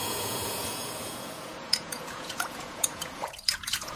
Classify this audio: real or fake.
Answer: fake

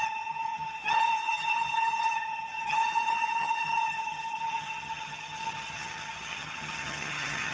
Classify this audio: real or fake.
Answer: fake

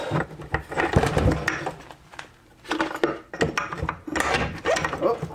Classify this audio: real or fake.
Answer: real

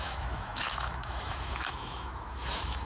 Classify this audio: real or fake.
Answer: fake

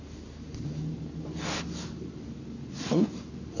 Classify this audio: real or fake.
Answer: real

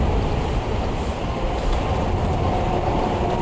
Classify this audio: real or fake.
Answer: real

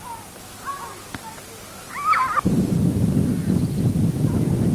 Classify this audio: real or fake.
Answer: real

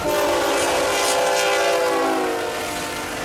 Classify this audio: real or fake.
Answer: real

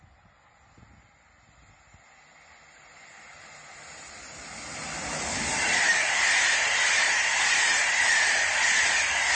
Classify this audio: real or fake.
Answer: real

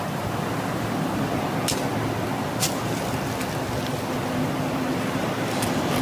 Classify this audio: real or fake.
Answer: real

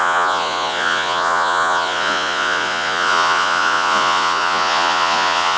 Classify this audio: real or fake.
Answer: fake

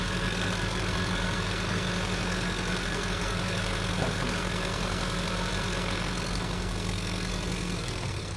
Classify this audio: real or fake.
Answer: fake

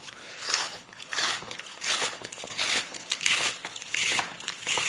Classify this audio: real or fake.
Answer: fake